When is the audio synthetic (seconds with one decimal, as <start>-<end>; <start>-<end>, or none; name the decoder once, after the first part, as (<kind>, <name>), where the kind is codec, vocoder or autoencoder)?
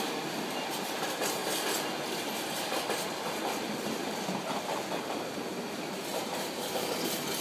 6.1-6.9 (vocoder, BigVGAN v2)